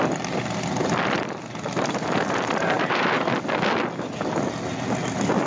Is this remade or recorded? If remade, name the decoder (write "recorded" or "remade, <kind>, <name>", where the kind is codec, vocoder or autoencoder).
recorded